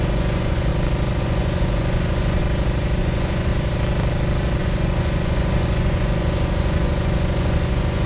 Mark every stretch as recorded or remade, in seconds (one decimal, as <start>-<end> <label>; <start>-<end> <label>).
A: 0.0-0.7 remade; 0.7-1.2 recorded; 1.2-2.4 remade; 2.4-3.0 recorded; 3.0-3.5 remade; 3.5-4.6 recorded; 4.6-8.1 remade